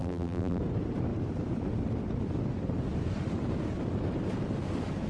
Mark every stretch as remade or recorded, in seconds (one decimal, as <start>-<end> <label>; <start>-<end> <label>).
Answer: 0.0-0.6 remade; 0.6-5.1 recorded